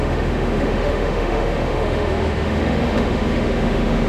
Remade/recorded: remade